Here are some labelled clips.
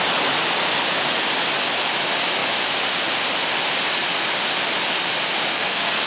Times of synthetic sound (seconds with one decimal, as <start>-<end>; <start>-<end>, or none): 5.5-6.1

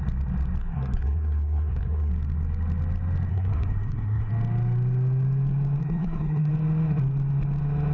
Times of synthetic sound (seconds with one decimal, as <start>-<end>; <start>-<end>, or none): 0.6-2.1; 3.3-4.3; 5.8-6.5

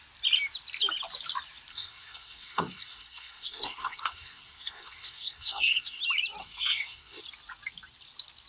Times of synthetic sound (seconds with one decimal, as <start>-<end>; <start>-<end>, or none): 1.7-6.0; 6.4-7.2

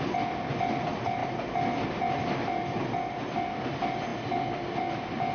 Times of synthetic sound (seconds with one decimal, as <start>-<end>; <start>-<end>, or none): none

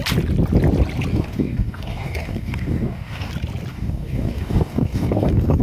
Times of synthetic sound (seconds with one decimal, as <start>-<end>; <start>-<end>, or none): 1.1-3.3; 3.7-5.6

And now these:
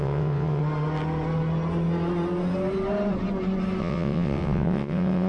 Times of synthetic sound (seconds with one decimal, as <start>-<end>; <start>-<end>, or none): 0.0-0.6; 3.8-5.3